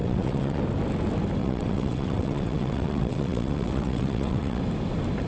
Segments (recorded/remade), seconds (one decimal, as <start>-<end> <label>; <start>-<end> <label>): 0.0-0.6 remade; 0.6-1.4 recorded; 1.4-4.6 remade; 4.6-5.3 recorded

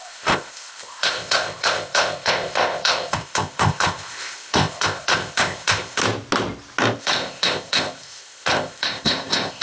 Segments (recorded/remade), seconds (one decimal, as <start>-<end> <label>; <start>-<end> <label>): 0.0-6.0 remade; 6.0-7.0 recorded; 7.0-9.6 remade

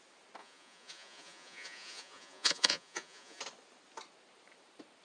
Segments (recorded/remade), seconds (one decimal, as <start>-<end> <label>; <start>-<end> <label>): 0.0-0.4 recorded; 0.4-3.4 remade; 3.4-5.0 recorded

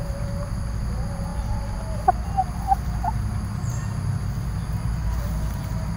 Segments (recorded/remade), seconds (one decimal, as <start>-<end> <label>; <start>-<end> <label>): 0.0-6.0 recorded

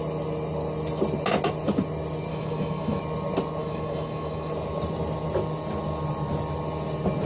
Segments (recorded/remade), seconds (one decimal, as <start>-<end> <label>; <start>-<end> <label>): 0.0-2.3 recorded; 2.3-3.0 remade; 3.0-3.6 recorded; 3.6-4.5 remade; 4.5-7.3 recorded